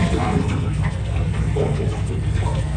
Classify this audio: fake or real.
fake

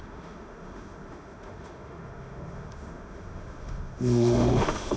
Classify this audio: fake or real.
fake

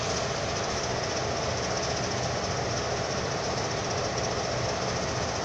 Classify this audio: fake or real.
real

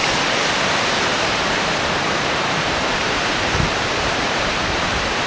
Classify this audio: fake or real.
fake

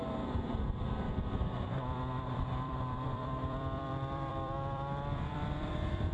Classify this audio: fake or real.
fake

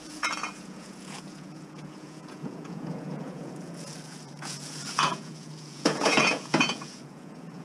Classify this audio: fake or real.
fake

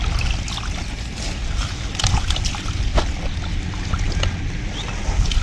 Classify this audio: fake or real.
real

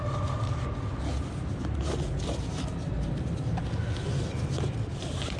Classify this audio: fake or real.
real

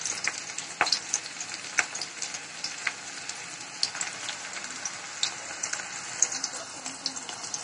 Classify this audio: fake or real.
real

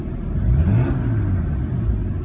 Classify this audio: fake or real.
real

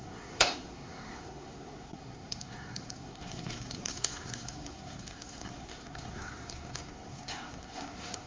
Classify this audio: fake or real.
fake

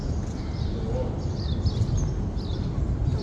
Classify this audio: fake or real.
real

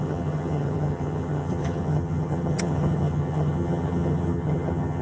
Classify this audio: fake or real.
fake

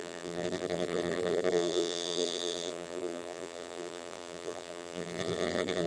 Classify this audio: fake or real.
fake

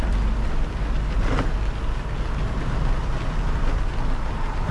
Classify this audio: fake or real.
real